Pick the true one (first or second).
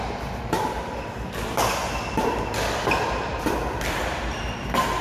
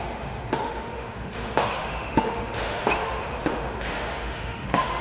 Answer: first